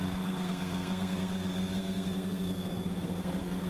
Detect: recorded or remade remade